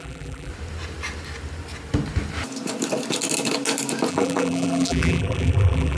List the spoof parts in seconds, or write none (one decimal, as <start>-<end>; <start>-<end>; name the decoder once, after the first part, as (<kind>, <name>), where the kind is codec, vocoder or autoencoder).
0.0-0.5 (vocoder, BigVGAN v2); 4.1-6.0